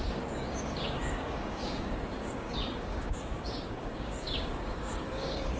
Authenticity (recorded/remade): remade